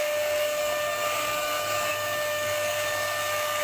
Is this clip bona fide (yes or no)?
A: no